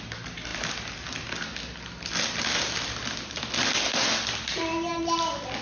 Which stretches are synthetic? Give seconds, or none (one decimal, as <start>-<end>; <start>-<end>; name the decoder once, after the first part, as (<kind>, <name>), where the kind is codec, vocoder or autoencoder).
none